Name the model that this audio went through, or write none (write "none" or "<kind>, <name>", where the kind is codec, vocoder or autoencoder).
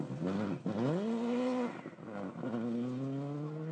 none